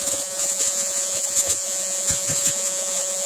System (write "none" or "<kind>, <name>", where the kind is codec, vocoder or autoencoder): vocoder, Vocos